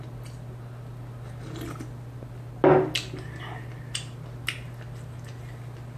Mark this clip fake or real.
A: real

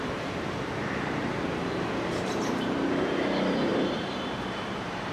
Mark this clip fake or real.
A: fake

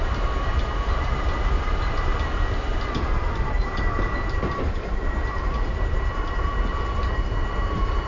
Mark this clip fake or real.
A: real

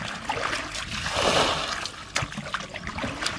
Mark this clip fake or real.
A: real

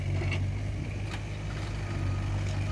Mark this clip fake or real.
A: real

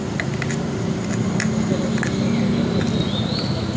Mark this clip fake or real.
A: real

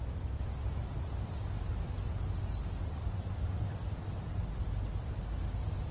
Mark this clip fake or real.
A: real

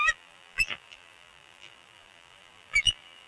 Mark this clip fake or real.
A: fake